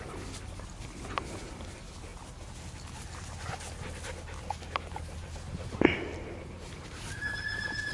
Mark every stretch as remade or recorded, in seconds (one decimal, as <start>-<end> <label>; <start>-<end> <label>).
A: 0.0-2.1 remade; 2.1-6.8 recorded; 6.8-7.9 remade